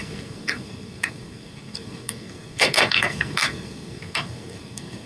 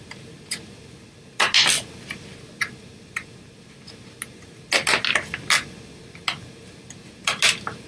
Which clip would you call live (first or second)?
second